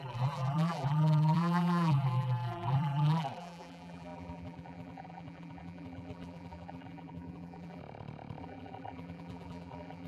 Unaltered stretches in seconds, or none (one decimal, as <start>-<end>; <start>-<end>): 7.8-8.4

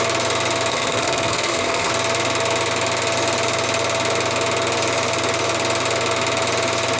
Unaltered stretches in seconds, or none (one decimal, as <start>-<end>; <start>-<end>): 0.0-0.7; 1.9-7.0

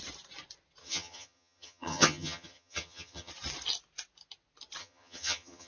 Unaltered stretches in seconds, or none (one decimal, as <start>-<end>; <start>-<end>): 0.0-0.8; 3.3-4.8

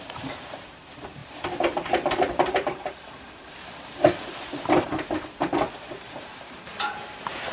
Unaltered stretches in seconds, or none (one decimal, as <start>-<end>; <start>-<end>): 1.2-5.7

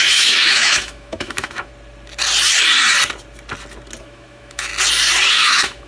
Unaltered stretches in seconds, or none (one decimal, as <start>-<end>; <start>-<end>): 1.7-4.0; 4.7-5.3

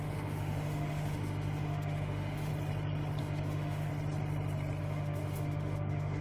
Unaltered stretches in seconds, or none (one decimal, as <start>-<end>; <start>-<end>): 2.5-3.2; 3.9-4.8

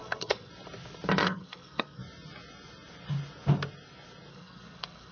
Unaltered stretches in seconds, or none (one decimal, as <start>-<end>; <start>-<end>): 0.5-1.2; 2.0-4.3